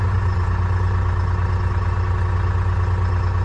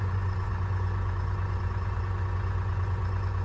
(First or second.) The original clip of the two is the first